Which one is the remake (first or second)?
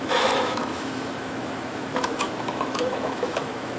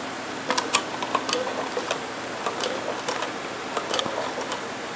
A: first